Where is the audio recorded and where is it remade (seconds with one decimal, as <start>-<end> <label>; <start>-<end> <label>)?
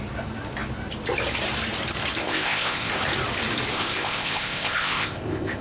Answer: 0.0-2.2 recorded; 2.2-2.9 remade; 2.9-3.7 recorded; 3.7-5.6 remade